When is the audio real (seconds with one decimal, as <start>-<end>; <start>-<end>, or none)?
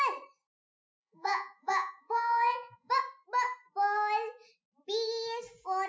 0.0-1.0; 2.9-5.9